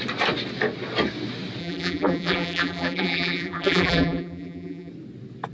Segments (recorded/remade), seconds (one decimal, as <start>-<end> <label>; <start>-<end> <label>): 0.0-1.6 recorded; 1.6-4.9 remade; 4.9-5.5 recorded